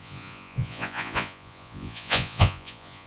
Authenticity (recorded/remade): remade